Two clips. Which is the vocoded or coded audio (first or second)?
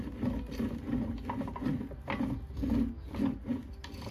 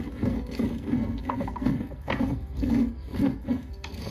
second